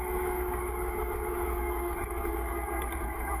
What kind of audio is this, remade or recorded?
remade